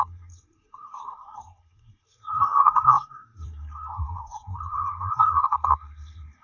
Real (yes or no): no